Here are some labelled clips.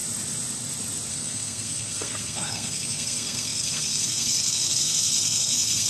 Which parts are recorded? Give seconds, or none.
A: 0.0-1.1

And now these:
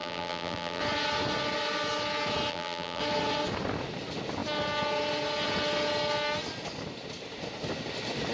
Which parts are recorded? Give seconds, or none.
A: 0.8-2.5; 3.0-8.3

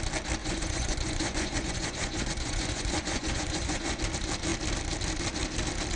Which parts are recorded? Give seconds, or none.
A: 0.0-0.4; 4.0-6.0

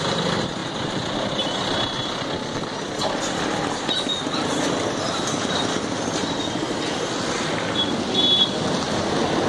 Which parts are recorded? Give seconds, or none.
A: 0.0-9.5

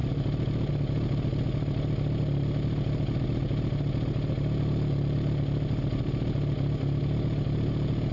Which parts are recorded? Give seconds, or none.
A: 0.0-8.1